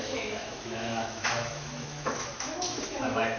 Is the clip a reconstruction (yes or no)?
yes